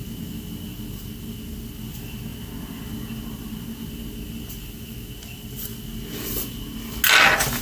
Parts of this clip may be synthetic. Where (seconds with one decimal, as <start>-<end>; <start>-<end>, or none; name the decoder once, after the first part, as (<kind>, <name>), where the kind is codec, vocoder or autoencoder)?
none